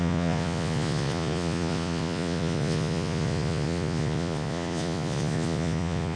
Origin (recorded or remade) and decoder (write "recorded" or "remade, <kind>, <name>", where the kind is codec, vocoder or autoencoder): remade, vocoder, Vocos